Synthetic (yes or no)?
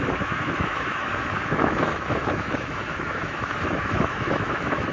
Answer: yes